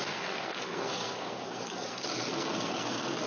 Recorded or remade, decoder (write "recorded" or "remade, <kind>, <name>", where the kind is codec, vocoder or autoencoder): remade, codec, SNAC